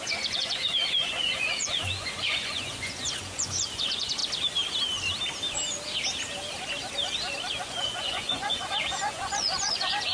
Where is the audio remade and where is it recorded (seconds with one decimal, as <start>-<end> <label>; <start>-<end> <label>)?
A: 0.0-4.2 remade; 4.2-7.6 recorded; 7.6-10.1 remade